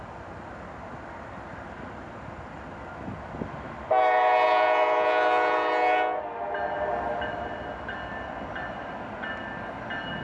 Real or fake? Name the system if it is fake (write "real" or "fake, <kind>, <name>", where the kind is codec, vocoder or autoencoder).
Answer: real